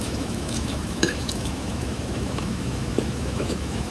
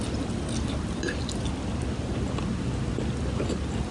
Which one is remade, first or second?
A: first